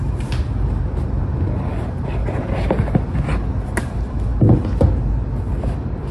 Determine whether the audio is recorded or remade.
recorded